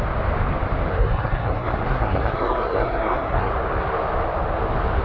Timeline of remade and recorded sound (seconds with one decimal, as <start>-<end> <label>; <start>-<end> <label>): 0.0-0.9 recorded; 0.9-3.5 remade; 3.5-5.0 recorded